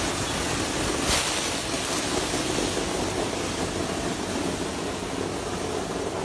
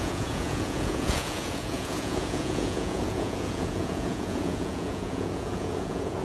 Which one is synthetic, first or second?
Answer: second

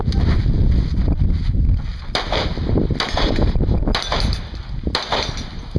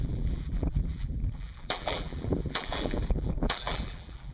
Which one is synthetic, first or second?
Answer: second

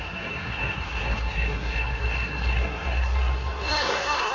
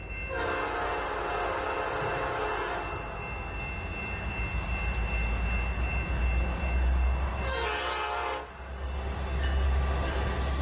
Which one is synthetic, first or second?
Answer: first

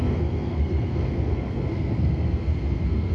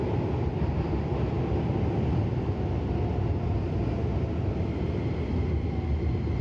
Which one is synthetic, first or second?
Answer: first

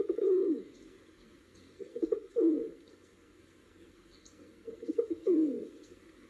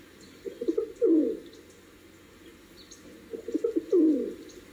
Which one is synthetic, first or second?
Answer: first